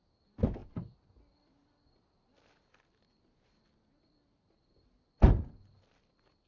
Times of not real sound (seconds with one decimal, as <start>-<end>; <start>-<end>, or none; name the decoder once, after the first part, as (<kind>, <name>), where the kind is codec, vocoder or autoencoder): none